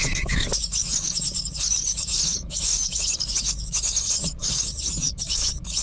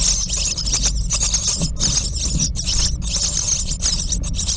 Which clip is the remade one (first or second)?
first